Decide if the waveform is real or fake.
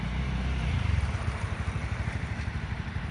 fake